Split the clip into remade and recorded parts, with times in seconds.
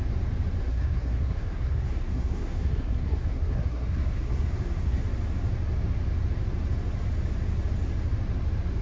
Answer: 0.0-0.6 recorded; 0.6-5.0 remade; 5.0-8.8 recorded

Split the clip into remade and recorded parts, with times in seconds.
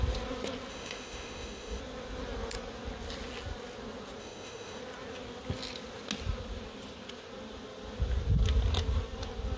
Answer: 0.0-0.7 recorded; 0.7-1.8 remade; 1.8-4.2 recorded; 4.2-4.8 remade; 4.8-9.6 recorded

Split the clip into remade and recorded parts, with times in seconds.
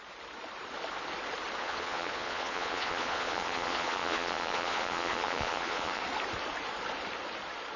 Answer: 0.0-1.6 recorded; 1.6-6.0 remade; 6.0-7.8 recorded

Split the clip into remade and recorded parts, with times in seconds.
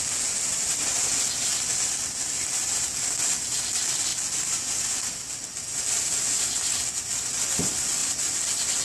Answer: 0.0-8.8 recorded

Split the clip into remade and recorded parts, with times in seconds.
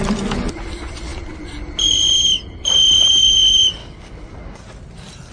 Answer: 0.0-3.8 recorded; 3.8-4.6 remade; 4.6-5.3 recorded